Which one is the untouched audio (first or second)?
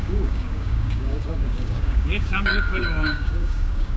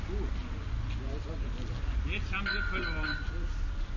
second